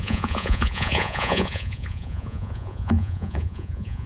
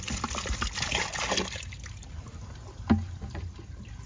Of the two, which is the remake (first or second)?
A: first